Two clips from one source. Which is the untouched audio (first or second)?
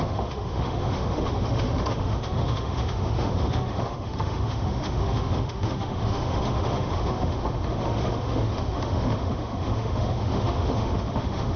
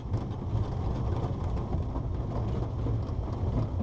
second